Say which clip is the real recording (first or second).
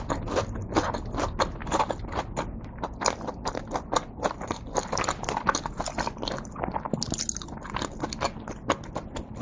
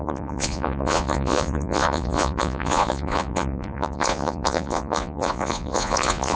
first